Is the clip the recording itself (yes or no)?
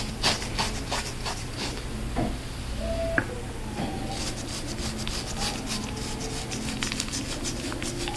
yes